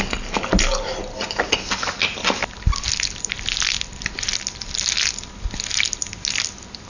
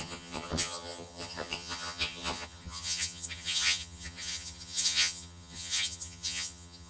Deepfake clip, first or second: second